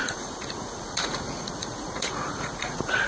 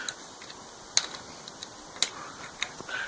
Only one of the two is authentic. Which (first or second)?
second